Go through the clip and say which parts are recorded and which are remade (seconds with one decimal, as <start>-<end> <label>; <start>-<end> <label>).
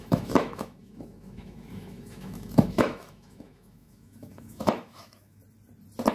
0.0-5.4 remade; 5.4-6.1 recorded